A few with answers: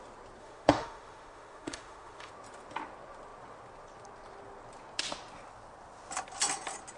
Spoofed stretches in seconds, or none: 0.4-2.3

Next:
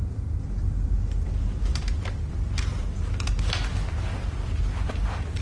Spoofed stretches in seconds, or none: none